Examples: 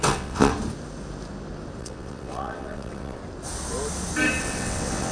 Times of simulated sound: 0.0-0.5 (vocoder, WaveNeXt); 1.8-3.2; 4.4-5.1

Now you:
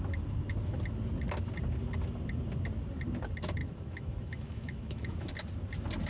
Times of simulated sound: 3.6-5.3 (autoencoder, DAC-VAE)

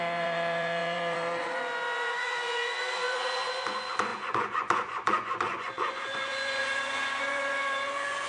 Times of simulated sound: 0.0-8.3 (vocoder, Vocos)

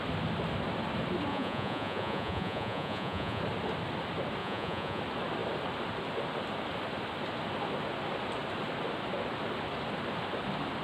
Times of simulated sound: 1.3-3.4 (vocoder, Vocos); 4.4-5.0

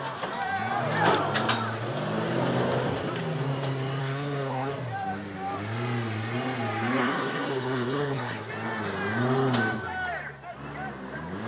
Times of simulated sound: 4.0-4.7 (codec, SNAC); 7.0-8.5

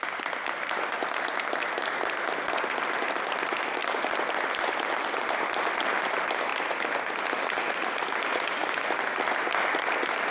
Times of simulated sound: 0.0-8.6 (vocoder, BigVGAN v2); 9.6-10.3

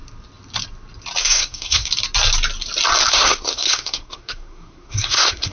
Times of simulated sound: 1.2-1.9 (codec, SNAC); 3.1-5.5